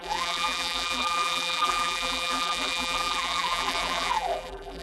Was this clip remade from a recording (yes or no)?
yes